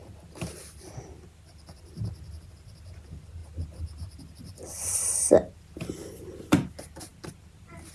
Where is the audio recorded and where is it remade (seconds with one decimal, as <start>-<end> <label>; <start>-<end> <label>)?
0.0-7.9 recorded